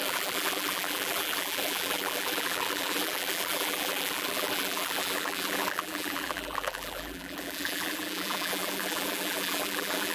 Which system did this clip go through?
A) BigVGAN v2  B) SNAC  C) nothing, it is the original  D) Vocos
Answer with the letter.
A